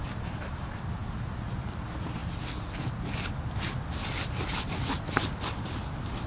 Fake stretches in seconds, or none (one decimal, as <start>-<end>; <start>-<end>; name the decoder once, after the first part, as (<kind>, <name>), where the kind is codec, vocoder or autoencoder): none